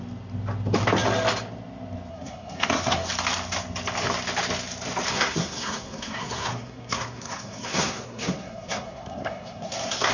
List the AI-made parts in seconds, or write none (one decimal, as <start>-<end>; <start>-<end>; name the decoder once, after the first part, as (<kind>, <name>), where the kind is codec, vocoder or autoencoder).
2.1-3.1 (codec, SNAC); 5.1-10.1